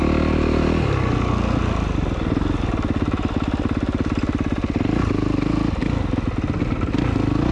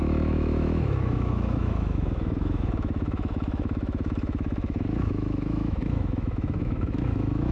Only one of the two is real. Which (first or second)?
first